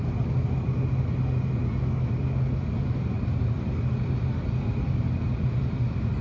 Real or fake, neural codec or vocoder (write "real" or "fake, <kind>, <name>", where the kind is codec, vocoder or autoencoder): real